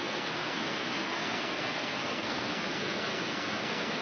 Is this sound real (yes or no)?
no